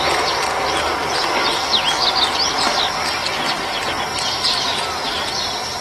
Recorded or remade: recorded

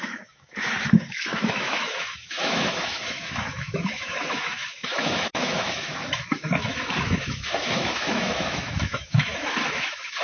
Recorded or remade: remade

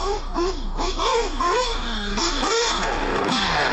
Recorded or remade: remade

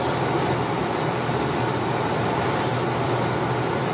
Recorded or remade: recorded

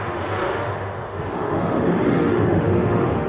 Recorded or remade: remade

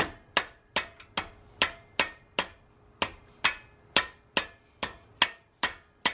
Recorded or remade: recorded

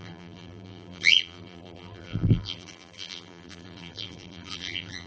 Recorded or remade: remade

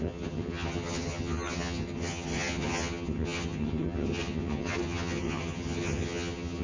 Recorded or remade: remade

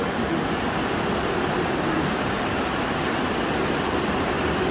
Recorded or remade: recorded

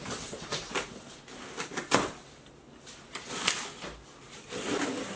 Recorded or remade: recorded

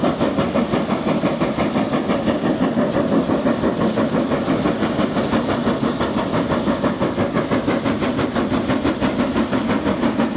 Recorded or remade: recorded